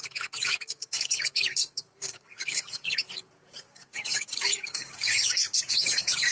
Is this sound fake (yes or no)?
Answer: yes